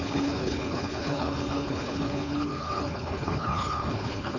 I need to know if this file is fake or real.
fake